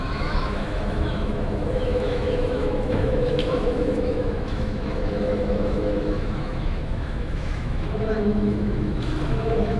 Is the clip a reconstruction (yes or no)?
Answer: yes